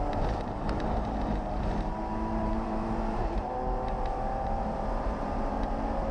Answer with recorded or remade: remade